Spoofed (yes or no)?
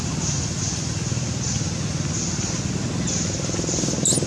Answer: no